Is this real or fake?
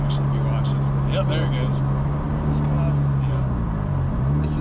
real